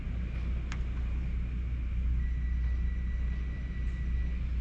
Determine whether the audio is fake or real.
real